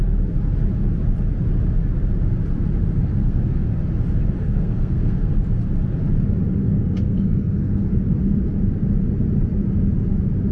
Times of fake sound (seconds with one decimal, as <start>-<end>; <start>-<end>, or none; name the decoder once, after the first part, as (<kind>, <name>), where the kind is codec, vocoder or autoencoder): 3.2-3.8 (codec, SNAC); 4.4-5.3; 6.6-7.9